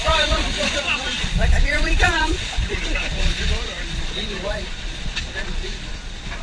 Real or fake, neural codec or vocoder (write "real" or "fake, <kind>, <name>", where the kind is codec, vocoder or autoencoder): fake, vocoder, Vocos